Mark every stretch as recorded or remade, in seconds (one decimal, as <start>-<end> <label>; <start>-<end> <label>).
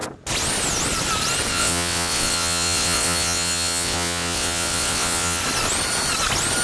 0.0-1.5 recorded; 1.5-5.4 remade; 5.4-6.6 recorded